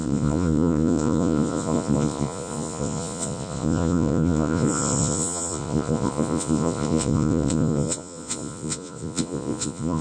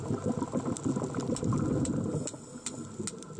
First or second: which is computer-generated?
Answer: first